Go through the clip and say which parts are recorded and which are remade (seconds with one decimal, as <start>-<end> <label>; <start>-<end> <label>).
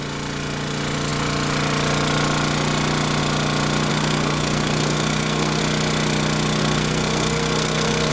0.0-3.9 recorded; 3.9-5.6 remade; 5.6-6.6 recorded; 6.6-8.1 remade